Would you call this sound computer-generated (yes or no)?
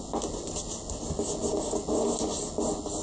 no